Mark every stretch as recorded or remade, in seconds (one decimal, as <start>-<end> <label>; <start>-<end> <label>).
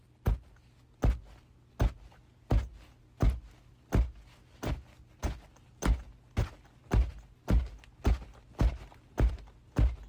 0.0-10.1 recorded